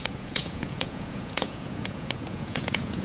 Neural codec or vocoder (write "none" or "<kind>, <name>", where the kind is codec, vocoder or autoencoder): vocoder, Vocos